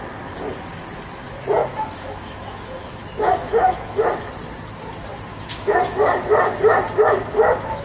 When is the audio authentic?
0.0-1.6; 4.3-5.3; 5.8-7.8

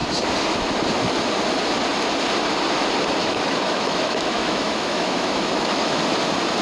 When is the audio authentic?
0.0-3.2; 6.0-6.6

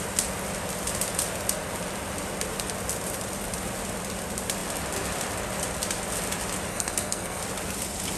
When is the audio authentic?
0.0-6.7; 7.4-8.2

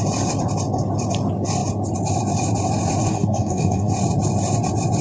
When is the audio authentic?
0.0-3.1; 3.9-5.0

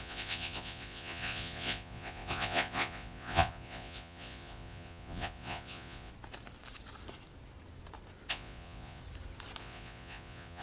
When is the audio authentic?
6.1-8.3; 9.0-9.6

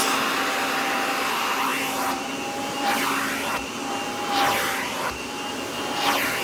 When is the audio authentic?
0.0-6.4